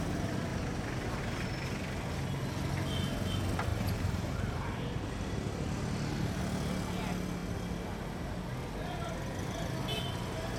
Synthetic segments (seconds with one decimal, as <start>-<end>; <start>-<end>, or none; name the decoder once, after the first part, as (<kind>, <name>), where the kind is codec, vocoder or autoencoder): 0.5-1.2 (vocoder, BigVGAN v2); 3.7-6.4